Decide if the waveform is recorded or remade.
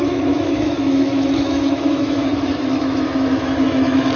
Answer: remade